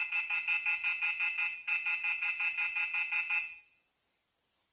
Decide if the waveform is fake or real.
real